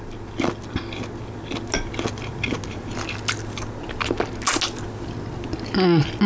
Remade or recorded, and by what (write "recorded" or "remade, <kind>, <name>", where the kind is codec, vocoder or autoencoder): recorded